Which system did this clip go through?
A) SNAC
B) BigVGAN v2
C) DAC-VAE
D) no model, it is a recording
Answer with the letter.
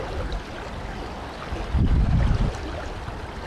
D